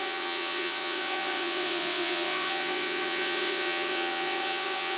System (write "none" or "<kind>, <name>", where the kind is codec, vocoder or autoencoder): vocoder, WaveNeXt